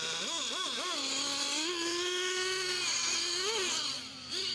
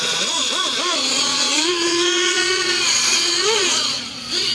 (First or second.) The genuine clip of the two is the first